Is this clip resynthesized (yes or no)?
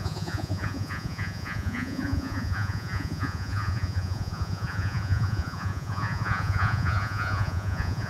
yes